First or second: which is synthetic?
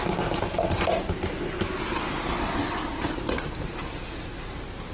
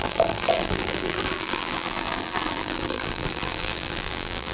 second